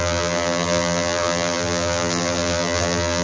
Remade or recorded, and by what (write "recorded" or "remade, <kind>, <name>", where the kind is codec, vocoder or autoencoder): remade, vocoder, BigVGAN v2